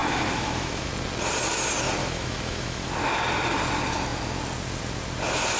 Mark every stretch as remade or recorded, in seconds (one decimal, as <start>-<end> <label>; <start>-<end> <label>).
0.0-0.9 remade; 0.9-2.0 recorded; 2.0-2.9 remade; 2.9-5.6 recorded